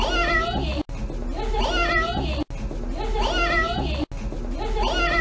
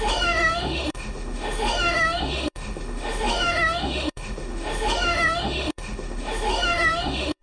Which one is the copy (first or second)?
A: second